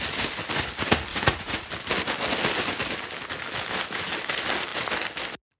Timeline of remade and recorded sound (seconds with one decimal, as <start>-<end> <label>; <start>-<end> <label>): 0.0-1.1 recorded; 1.1-1.7 remade; 1.7-5.6 recorded